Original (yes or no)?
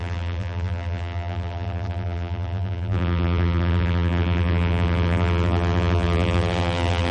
no